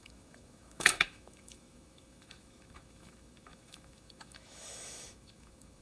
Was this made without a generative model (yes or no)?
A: no